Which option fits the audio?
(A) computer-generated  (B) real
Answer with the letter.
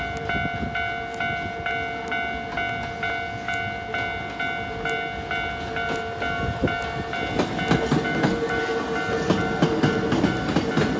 B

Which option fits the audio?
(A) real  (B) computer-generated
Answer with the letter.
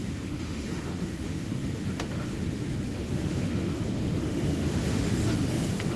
B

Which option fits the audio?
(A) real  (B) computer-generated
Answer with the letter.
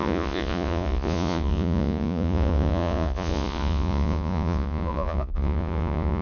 B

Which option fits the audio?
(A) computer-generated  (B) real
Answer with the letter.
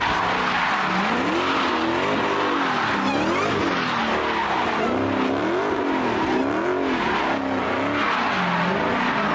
B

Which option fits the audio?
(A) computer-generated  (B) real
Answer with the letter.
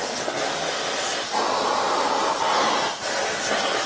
B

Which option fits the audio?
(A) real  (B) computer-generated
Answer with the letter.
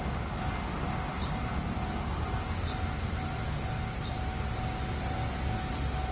A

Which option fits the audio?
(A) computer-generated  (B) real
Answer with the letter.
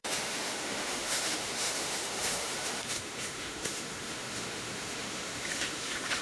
A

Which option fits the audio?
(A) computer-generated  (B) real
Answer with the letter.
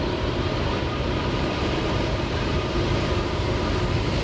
A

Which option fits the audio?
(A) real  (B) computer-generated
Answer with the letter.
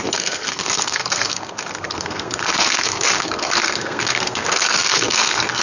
B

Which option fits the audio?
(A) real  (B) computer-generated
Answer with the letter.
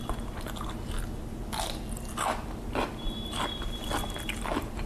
A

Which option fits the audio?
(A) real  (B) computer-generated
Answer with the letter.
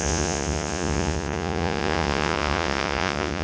B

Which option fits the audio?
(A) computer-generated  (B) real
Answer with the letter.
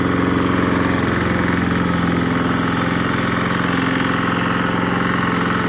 B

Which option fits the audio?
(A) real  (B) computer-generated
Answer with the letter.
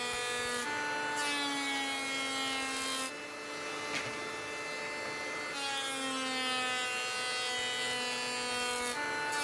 A